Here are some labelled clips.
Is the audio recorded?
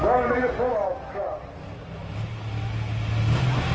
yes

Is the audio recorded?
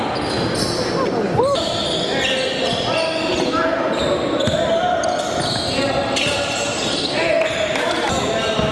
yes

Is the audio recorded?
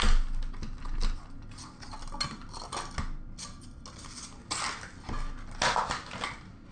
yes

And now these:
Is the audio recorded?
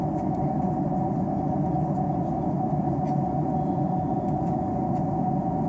yes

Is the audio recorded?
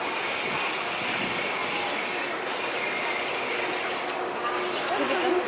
yes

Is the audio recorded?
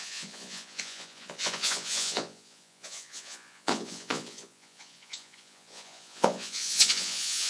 no